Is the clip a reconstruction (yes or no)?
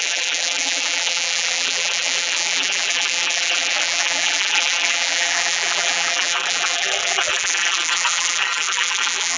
yes